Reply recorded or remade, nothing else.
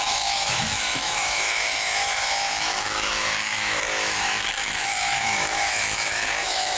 remade